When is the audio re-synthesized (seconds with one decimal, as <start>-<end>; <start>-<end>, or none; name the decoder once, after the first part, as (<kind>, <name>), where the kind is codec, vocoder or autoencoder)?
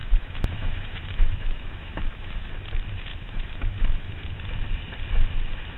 0.0-2.5 (autoencoder, DAC-VAE); 3.1-4.2